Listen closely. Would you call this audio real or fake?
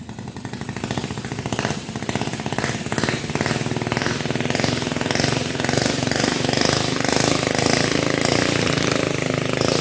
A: real